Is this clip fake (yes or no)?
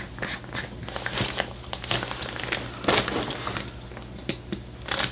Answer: no